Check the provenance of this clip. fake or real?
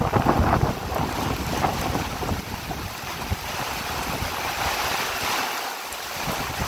real